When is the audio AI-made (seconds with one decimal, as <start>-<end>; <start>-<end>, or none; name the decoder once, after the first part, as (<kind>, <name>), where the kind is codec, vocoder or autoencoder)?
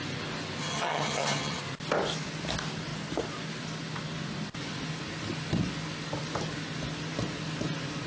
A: 0.6-1.6 (vocoder, HiFi-GAN)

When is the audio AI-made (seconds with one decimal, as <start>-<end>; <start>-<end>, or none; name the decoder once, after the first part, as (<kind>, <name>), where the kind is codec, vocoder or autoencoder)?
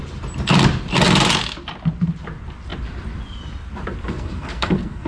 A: 4.0-5.1 (codec, SNAC)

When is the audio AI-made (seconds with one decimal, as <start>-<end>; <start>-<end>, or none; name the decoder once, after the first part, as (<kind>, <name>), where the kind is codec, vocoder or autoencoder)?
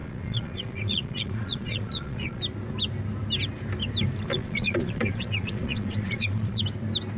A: 0.0-2.4 (vocoder, Vocos); 4.3-6.6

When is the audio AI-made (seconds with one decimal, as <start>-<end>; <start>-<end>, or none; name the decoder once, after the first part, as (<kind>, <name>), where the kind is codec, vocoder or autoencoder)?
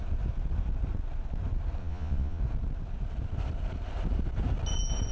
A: 1.8-2.4 (vocoder, Vocos)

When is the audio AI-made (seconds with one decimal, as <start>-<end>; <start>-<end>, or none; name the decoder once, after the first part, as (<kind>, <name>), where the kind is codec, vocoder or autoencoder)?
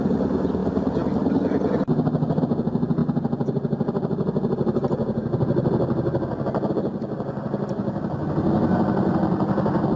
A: none